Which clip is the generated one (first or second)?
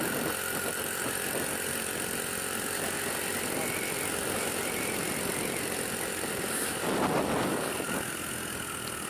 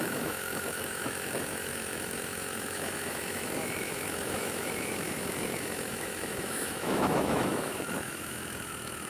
second